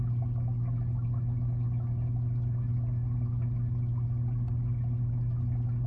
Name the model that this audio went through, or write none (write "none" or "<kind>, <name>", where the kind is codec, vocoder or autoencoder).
none